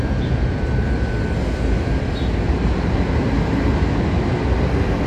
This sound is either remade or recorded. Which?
recorded